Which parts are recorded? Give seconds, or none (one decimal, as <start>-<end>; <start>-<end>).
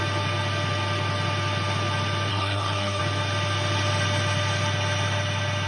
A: 0.0-2.3; 3.0-5.7